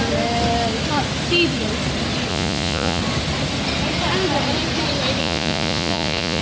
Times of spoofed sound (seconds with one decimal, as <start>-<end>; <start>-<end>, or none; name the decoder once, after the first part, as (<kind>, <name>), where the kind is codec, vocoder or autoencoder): 2.3-3.0 (vocoder, Vocos); 5.2-6.4